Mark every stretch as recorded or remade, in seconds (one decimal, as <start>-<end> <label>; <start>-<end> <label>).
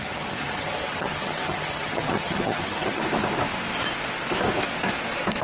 0.0-3.0 remade; 3.0-5.4 recorded